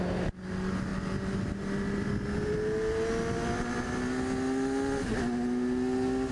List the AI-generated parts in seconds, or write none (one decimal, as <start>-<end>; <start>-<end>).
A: none